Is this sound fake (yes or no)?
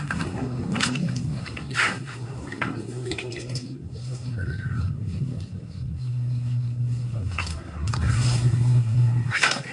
yes